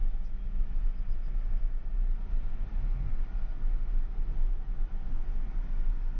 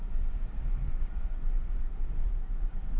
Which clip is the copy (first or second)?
second